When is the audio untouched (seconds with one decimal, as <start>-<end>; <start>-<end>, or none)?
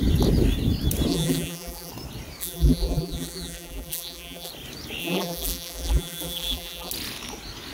0.0-1.1; 1.9-2.4; 4.5-5.0; 6.9-7.7